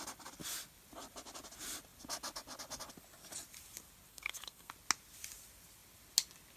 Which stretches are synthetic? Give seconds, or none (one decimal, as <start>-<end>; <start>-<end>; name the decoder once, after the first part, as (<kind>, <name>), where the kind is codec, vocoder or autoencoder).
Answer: 4.1-4.7 (codec, SNAC)